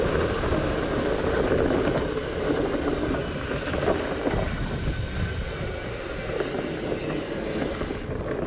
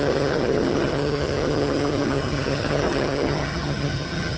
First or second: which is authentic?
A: first